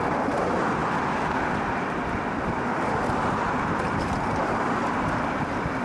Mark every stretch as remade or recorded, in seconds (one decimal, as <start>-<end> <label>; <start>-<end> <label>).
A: 0.0-5.8 recorded